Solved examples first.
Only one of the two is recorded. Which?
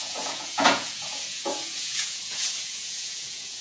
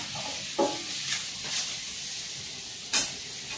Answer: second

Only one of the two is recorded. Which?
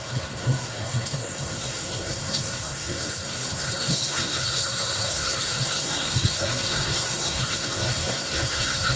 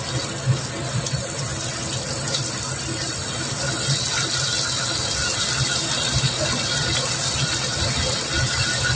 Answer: second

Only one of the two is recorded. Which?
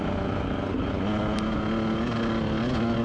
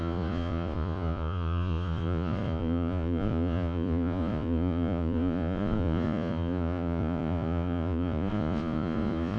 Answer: first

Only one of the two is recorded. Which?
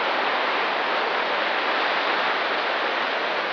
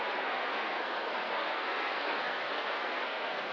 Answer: first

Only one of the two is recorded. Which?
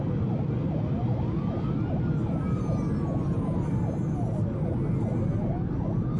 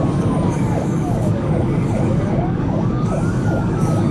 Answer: first